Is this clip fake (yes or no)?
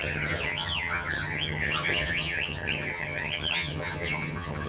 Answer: yes